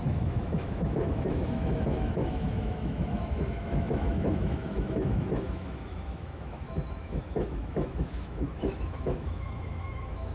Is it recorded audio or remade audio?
remade